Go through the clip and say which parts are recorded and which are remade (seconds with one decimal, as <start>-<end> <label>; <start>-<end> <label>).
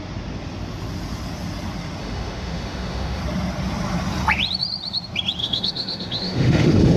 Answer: 0.0-2.0 recorded; 2.0-3.2 remade; 3.2-5.4 recorded; 5.4-7.0 remade